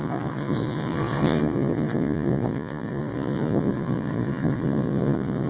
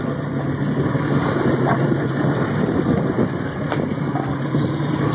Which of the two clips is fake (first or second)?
first